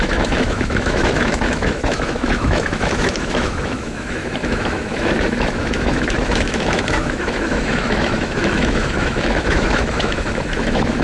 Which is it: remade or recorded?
remade